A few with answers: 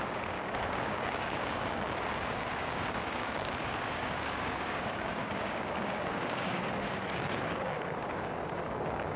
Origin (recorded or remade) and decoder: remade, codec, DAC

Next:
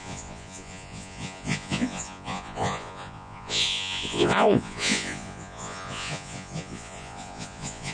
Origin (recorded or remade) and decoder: remade, vocoder, Vocos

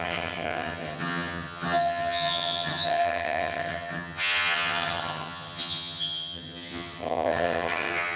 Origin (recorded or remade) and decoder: remade, vocoder, HiFi-GAN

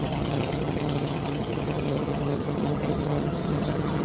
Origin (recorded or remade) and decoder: remade, vocoder, HiFi-GAN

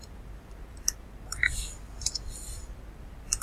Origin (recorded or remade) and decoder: remade, vocoder, BigVGAN v2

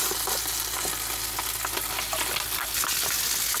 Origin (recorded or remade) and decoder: recorded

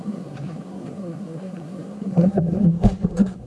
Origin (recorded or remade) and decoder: remade, codec, SNAC